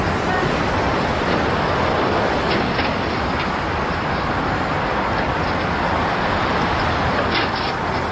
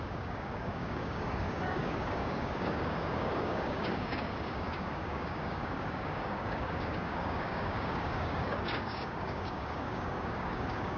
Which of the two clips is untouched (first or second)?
first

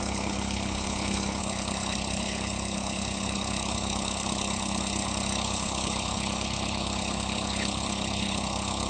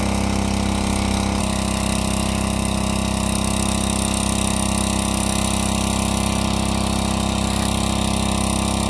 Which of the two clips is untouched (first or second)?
second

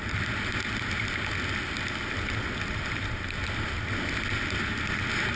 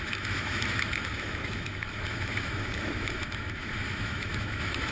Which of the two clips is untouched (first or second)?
first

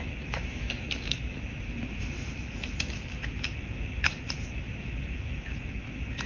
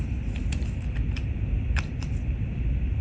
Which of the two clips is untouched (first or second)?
second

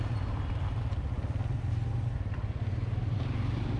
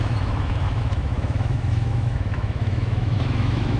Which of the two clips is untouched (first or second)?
first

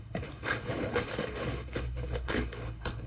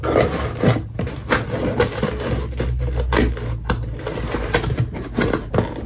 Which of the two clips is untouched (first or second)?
second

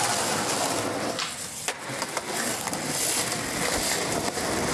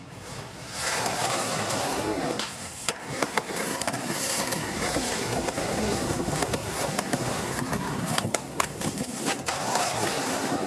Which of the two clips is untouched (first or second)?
first